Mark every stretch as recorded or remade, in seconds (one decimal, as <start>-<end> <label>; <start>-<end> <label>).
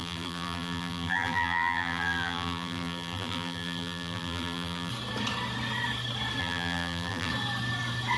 0.0-4.9 remade; 4.9-6.4 recorded; 6.4-7.3 remade; 7.3-8.2 recorded